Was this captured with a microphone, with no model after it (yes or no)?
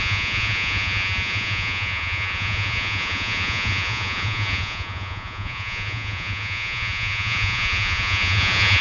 no